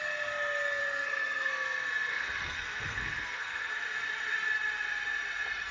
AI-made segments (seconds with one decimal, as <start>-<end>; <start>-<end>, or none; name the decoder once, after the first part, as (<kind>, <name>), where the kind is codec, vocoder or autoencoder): 0.8-1.5 (codec, SNAC); 2.1-3.7